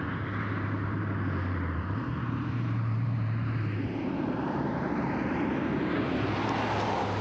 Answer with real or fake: fake